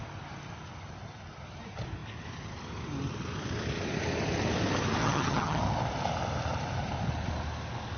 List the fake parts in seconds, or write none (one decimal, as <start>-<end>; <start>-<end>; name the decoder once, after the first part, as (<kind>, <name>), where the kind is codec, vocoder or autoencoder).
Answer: 5.0-5.6 (vocoder, HiFi-GAN)